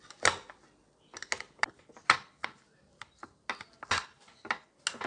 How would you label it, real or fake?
real